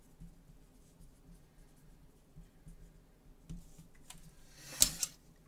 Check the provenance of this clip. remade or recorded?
recorded